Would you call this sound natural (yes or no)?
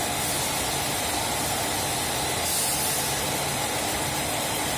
yes